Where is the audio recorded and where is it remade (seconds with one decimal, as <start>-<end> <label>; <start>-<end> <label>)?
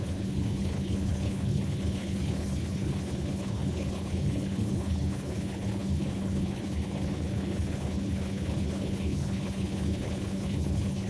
0.0-11.1 remade